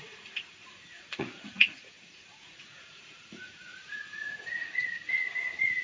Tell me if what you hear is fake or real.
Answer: fake